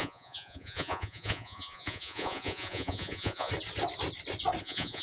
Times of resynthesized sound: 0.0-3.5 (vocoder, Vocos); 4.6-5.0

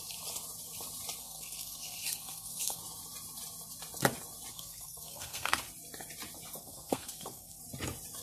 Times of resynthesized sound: 1.2-2.8 (codec, SNAC); 4.5-5.6; 6.6-7.6

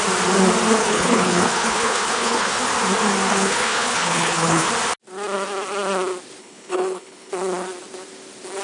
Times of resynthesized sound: 0.8-2.6 (codec, HILCodec); 3.3-4.7; 6.4-7.3

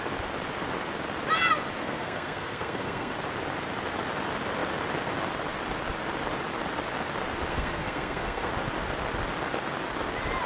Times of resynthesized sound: 1.8-3.1 (codec, SNAC); 7.5-8.5

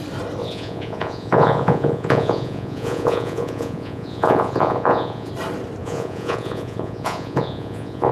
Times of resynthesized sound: 0.4-5.3 (vocoder, Vocos); 5.8-8.1

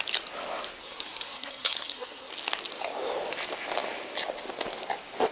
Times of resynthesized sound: 0.8-2.3 (codec, SNAC)

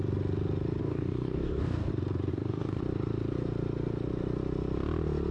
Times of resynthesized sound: 0.8-1.9 (codec, DAC); 2.3-2.8